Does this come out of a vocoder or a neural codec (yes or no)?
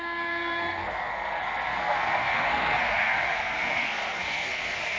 yes